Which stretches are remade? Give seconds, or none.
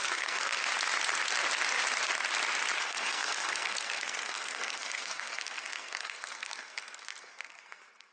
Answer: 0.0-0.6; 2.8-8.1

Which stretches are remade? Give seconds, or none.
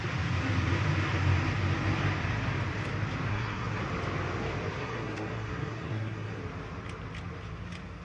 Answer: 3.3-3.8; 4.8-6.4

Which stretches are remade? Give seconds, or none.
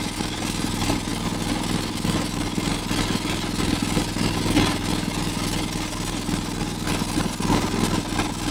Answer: none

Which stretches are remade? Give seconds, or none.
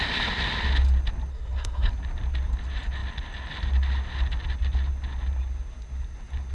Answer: 1.3-1.9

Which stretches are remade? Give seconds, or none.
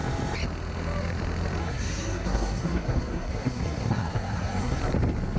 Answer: 1.6-4.8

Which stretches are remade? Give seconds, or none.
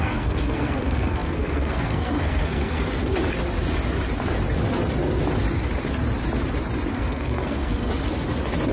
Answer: 0.0-2.8; 6.9-7.9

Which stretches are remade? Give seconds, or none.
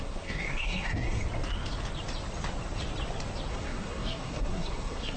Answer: 0.0-1.2; 3.5-5.2